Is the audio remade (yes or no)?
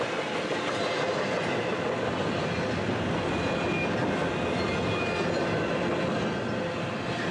no